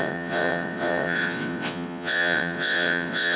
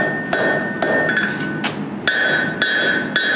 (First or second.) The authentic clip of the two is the second